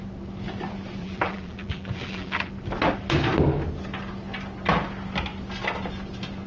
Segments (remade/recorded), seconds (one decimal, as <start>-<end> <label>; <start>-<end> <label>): 0.0-1.0 recorded; 1.0-2.5 remade; 2.5-6.5 recorded